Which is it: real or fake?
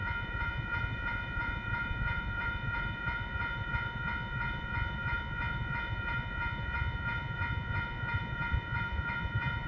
fake